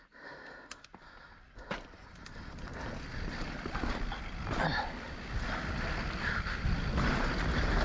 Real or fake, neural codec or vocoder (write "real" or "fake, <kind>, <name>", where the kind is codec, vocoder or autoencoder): real